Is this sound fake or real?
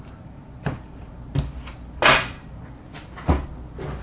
real